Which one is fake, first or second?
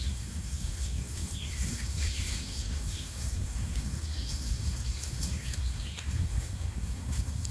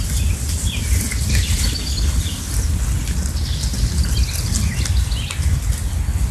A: first